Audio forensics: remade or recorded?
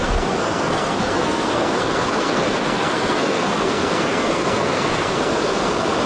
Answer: remade